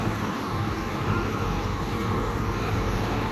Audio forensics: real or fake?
fake